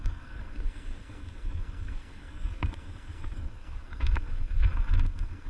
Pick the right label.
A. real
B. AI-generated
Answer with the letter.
B